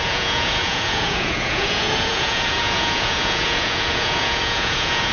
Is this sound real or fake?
fake